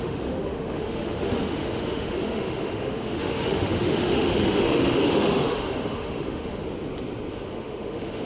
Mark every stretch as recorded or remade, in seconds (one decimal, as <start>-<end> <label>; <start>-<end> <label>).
0.0-6.6 remade; 6.6-7.3 recorded; 7.3-8.3 remade